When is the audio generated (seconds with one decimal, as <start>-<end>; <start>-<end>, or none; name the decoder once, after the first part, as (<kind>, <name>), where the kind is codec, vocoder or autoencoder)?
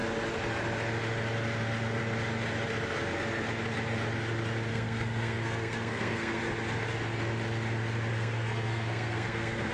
4.7-6.4 (codec, SNAC); 8.1-9.7